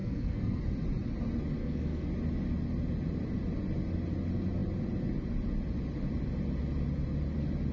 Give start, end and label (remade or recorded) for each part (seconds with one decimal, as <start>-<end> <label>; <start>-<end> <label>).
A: 0.0-0.6 remade; 0.6-1.6 recorded; 1.6-2.1 remade; 2.1-7.7 recorded